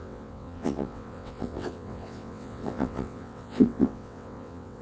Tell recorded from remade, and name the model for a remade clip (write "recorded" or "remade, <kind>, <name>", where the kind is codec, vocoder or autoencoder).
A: remade, vocoder, WaveNeXt